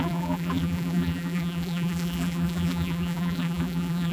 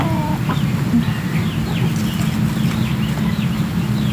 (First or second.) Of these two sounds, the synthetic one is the first